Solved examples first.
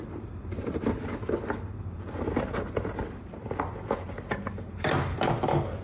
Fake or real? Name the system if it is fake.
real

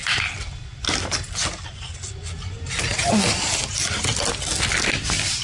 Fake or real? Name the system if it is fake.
real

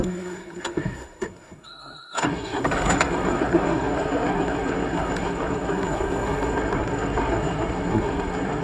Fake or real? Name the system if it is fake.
fake, codec, SNAC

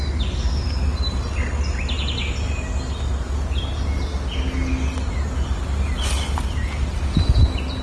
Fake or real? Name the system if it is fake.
real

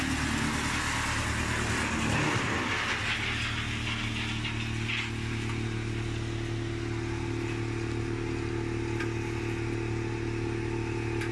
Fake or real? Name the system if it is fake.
real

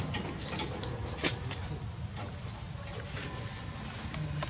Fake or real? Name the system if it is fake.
real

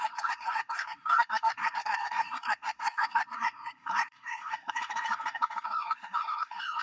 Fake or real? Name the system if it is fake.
fake, codec, SNAC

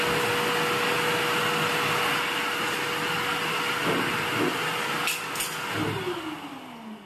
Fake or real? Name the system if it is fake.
real